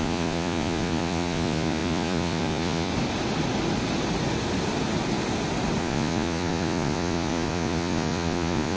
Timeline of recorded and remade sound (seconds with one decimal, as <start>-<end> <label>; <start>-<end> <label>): 0.0-2.9 remade; 2.9-5.8 recorded; 5.8-8.8 remade